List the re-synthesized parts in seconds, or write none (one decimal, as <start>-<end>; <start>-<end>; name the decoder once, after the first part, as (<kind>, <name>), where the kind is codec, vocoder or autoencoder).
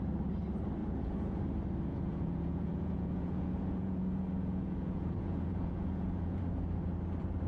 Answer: 0.8-1.4 (vocoder, Vocos); 1.9-6.4